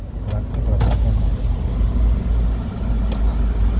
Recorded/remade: recorded